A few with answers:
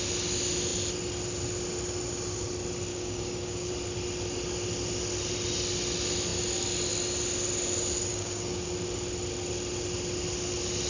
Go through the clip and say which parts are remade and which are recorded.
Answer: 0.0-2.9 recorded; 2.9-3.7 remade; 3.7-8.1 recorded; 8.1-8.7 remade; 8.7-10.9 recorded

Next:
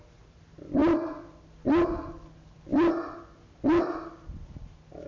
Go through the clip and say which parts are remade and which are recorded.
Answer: 0.0-5.1 recorded

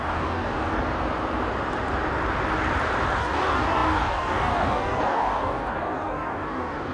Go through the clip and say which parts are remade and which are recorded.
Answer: 0.0-0.8 remade; 0.8-3.2 recorded; 3.2-6.9 remade

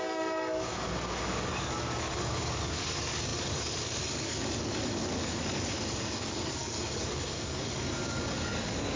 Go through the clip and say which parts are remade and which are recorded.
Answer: 0.0-9.0 remade

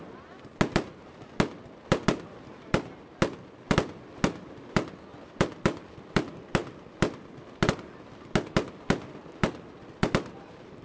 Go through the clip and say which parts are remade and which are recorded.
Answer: 0.0-10.8 recorded